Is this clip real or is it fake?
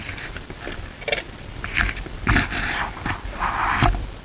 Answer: real